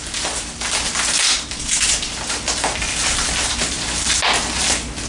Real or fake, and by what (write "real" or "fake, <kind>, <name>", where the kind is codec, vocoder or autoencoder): real